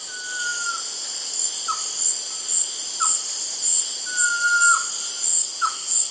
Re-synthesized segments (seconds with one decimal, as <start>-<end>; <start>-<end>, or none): 5.4-6.1